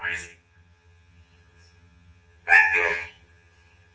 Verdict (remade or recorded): remade